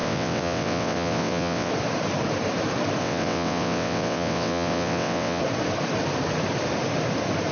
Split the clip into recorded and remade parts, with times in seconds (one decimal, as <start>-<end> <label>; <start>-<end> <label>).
0.0-1.7 remade; 1.7-3.0 recorded; 3.0-5.4 remade; 5.4-7.5 recorded